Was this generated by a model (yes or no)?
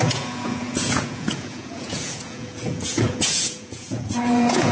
yes